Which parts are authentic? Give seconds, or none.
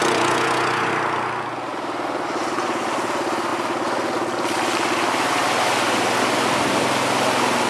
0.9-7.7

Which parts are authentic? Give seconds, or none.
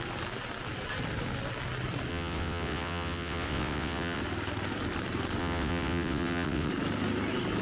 0.0-2.1; 4.2-5.4; 6.7-7.6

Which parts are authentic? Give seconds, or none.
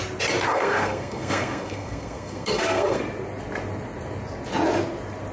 0.0-0.5; 3.0-5.3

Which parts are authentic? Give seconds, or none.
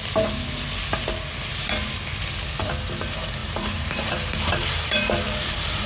0.0-3.4